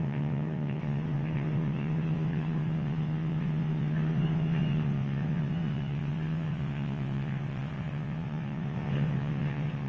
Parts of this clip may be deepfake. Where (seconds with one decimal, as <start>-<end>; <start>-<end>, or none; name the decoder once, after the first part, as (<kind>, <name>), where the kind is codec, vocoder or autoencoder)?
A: 0.0-9.9 (vocoder, WaveNeXt)